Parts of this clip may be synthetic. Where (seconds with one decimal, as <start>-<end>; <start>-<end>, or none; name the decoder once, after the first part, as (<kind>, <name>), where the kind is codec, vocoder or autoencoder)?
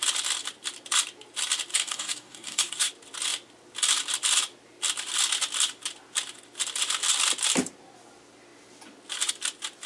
1.7-2.9 (codec, DAC)